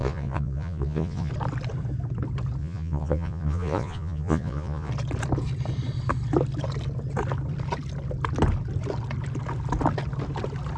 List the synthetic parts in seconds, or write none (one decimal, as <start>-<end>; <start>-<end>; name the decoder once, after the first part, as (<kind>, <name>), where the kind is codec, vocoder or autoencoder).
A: 0.0-1.3 (vocoder, Vocos); 2.6-4.9